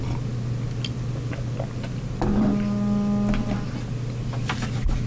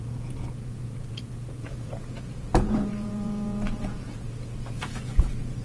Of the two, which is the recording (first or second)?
first